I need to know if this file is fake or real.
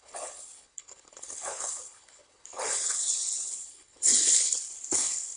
fake